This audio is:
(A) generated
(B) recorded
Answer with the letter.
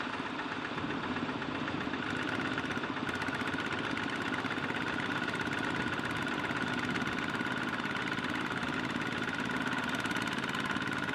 B